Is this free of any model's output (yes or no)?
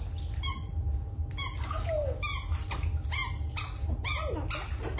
yes